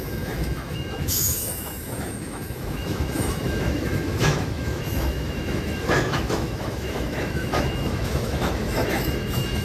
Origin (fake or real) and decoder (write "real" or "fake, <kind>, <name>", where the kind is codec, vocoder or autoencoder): fake, autoencoder, DAC-VAE